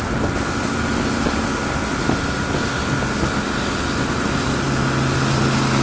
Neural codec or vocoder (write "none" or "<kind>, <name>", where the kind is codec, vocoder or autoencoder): none